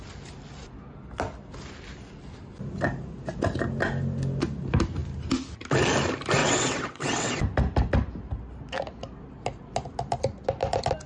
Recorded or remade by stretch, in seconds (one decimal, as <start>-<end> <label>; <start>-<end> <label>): 0.0-6.4 recorded; 6.4-7.3 remade; 7.3-11.1 recorded